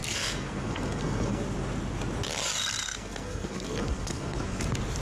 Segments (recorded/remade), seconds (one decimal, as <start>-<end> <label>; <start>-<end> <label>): 0.0-1.4 remade; 1.4-2.8 recorded; 2.8-4.6 remade; 4.6-5.0 recorded